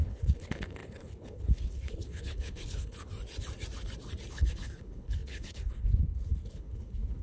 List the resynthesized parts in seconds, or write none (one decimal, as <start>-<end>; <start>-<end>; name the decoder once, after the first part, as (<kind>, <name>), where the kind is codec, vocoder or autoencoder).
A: 0.0-3.1 (codec, HILCodec); 4.3-7.2